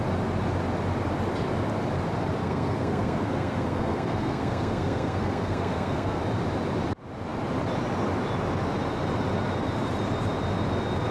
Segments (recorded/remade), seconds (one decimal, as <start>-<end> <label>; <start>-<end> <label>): 0.0-2.4 recorded; 2.4-6.2 remade; 6.2-11.1 recorded